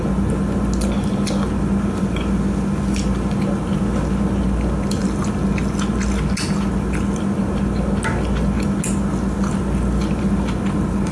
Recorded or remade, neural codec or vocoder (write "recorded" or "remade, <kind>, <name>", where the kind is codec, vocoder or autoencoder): recorded